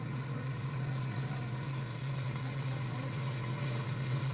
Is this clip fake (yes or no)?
yes